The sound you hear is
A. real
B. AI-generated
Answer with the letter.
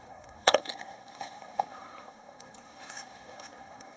B